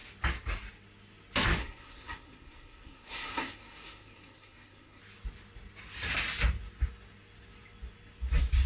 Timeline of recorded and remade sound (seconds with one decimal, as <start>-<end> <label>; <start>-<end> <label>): 0.0-1.6 recorded; 1.6-5.0 remade; 5.0-8.7 recorded